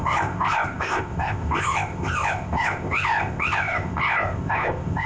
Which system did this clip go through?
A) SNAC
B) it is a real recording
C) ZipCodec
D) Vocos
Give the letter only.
C